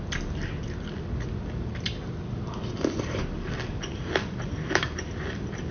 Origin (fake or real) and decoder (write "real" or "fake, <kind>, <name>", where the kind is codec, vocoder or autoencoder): real